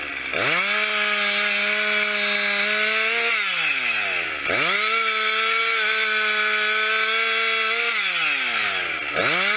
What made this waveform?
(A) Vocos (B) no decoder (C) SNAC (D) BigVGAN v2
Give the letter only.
B